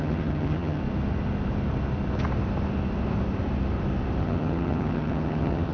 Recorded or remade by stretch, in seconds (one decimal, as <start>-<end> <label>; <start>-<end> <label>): 0.0-0.8 remade; 0.8-4.2 recorded; 4.2-5.7 remade